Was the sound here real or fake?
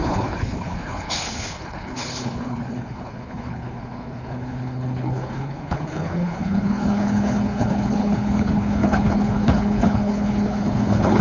fake